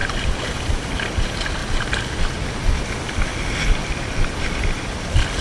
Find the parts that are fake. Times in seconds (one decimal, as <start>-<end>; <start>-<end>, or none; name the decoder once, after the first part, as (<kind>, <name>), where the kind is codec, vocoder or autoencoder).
0.0-1.6 (vocoder, BigVGAN v2); 4.4-5.4